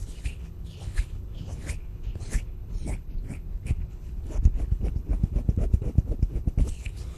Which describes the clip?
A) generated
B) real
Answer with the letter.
A